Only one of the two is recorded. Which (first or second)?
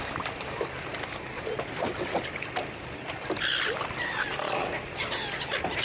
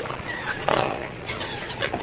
first